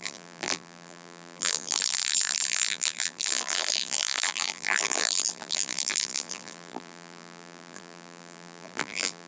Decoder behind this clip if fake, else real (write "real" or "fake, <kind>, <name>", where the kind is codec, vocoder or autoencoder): fake, vocoder, BigVGAN v2